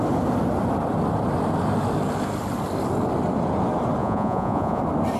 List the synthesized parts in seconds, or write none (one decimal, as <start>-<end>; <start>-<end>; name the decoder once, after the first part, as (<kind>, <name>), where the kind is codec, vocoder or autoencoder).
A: 4.0-4.8 (vocoder, Vocos)